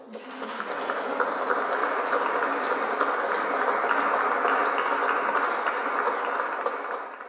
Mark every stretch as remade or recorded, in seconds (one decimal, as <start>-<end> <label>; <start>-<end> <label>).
0.0-1.8 recorded; 1.8-2.5 remade; 2.5-7.3 recorded